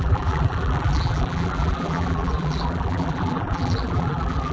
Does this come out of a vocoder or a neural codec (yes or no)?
yes